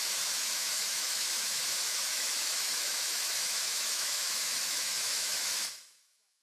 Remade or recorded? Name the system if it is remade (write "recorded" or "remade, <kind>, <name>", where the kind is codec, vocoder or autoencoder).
remade, autoencoder, DAC-VAE